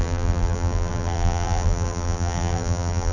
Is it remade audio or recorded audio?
remade